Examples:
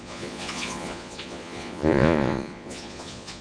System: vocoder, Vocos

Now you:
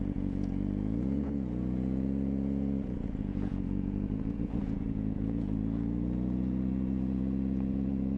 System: vocoder, Vocos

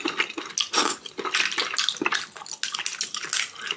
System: none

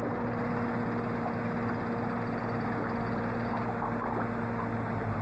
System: none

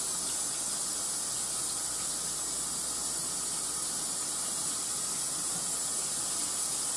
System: none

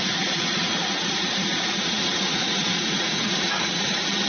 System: vocoder, Vocos